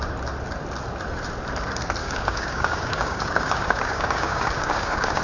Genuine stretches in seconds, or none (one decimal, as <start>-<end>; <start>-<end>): 0.0-2.0

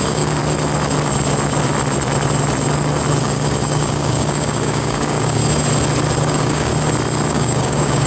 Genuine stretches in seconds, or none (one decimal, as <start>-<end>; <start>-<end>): 0.4-3.2; 5.4-6.2; 6.7-7.3